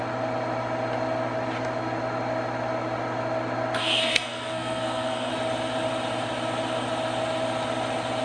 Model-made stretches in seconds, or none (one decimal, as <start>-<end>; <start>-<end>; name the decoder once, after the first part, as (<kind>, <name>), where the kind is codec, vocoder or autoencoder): 3.8-5.3 (codec, SNAC)